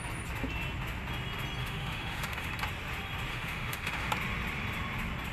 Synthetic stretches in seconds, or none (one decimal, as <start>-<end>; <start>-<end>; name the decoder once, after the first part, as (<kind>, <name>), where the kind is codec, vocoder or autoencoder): 1.6-2.5 (autoencoder, DAC-VAE); 3.3-4.1